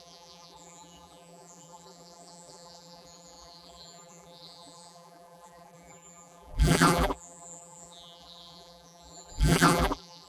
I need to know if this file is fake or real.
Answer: fake